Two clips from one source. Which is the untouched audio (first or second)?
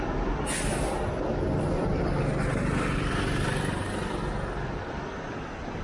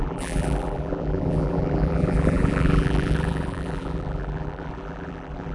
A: first